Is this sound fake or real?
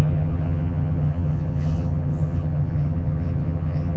fake